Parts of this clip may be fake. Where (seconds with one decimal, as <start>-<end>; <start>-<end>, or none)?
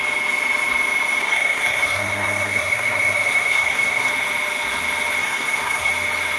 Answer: 1.2-4.1; 5.2-5.9